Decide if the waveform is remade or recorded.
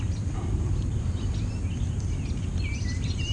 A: recorded